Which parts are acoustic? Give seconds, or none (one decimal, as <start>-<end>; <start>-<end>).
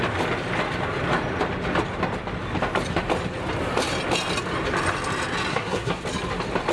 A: 0.0-5.5; 6.0-6.7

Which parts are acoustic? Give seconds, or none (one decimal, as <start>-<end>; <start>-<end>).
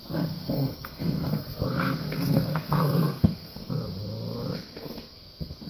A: 3.8-4.5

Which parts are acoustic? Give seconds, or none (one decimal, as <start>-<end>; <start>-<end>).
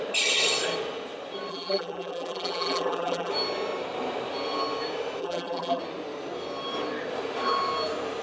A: 0.0-1.5; 3.3-5.2; 5.8-8.2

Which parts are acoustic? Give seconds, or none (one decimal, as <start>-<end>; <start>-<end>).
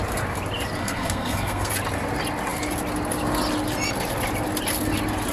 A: 0.0-0.8; 1.7-5.3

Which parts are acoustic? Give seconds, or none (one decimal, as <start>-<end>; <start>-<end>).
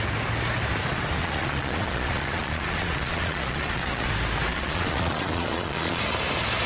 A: 0.0-1.2; 4.1-4.5; 6.0-6.7